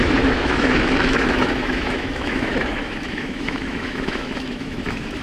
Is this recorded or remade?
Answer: remade